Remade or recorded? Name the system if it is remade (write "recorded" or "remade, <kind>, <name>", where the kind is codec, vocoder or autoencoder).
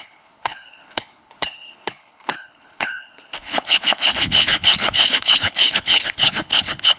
remade, codec, HILCodec